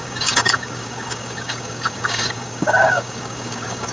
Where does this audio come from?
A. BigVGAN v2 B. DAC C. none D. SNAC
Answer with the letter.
B